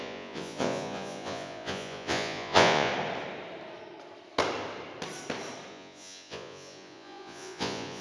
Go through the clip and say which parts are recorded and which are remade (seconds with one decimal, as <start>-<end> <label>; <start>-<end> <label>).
0.0-2.9 remade; 2.9-5.7 recorded; 5.7-8.0 remade